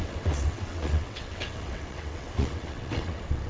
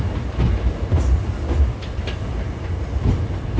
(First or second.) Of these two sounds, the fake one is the first